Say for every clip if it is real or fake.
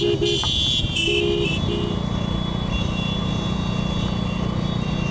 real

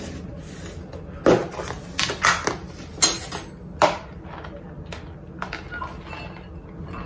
real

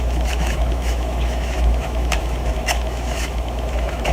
fake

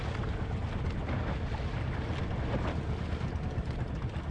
real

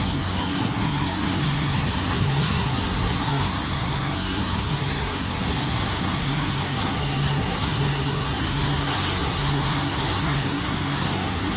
fake